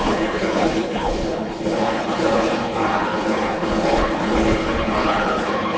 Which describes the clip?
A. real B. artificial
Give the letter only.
B